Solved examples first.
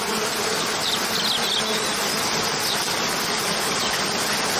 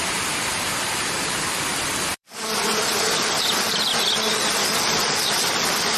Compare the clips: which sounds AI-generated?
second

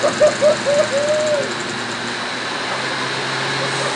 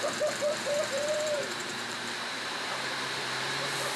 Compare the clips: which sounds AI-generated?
second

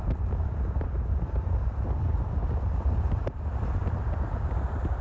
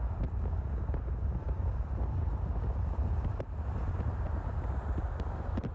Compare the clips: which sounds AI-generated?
first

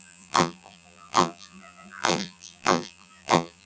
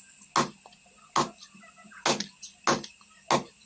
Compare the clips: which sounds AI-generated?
first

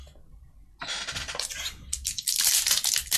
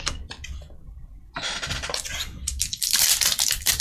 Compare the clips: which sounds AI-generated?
second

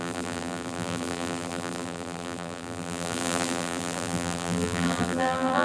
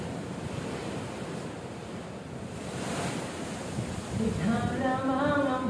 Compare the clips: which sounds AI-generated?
first